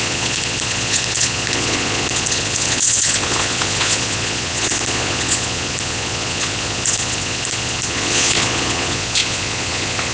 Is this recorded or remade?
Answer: remade